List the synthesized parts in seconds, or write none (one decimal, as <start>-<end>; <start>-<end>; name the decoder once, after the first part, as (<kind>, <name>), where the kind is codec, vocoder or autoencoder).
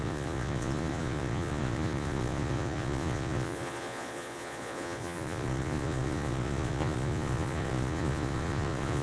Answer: 0.0-9.0 (vocoder, Vocos)